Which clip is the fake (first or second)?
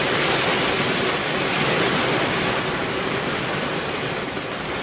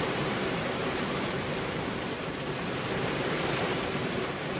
second